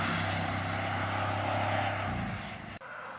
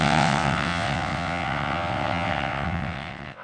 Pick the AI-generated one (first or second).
second